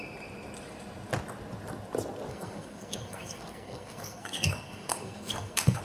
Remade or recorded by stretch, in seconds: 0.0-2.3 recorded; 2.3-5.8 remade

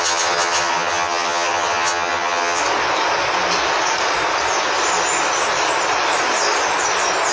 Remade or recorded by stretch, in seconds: 0.0-2.6 remade; 2.6-7.3 recorded

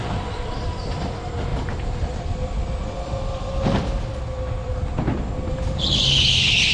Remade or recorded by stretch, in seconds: 0.0-6.7 recorded

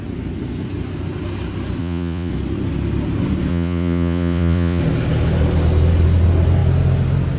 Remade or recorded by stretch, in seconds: 0.0-1.8 recorded; 1.8-2.3 remade; 2.3-3.5 recorded; 3.5-4.8 remade; 4.8-7.4 recorded